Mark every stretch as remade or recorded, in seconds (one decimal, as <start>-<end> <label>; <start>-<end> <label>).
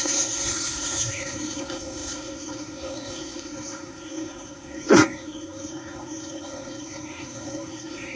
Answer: 0.0-8.2 remade